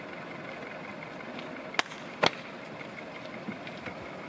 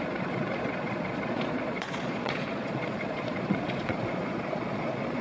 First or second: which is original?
first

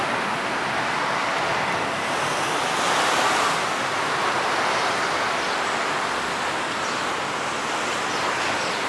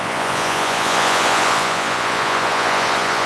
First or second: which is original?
first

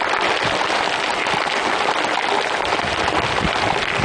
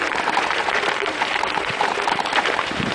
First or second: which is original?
first